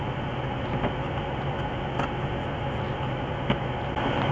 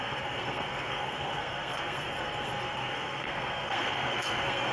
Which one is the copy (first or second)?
second